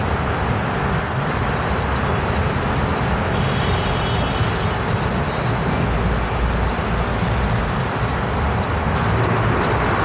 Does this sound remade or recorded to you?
recorded